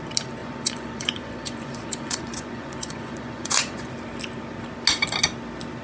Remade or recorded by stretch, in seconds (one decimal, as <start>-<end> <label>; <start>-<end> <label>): 0.0-0.4 recorded; 0.4-3.9 remade; 3.9-5.8 recorded